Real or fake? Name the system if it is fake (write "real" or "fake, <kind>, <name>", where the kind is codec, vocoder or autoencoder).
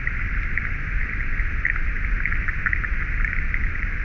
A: real